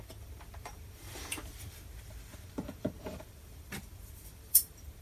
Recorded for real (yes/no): no